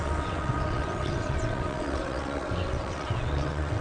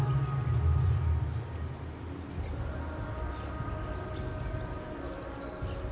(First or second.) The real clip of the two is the second